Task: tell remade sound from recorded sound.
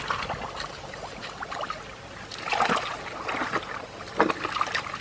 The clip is recorded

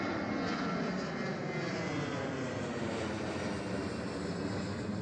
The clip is recorded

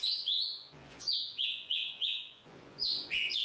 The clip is remade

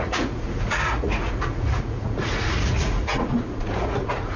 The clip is remade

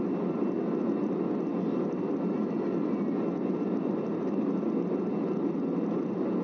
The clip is recorded